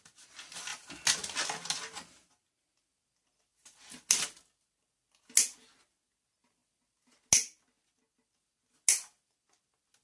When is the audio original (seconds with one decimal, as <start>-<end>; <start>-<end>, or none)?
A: 0.0-10.0